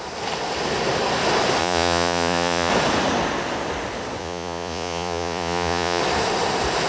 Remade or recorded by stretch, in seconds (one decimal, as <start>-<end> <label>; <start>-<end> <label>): 0.0-1.6 recorded; 1.6-2.7 remade; 2.7-4.2 recorded; 4.2-6.0 remade; 6.0-6.9 recorded